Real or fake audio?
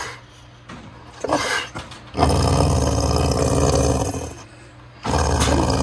real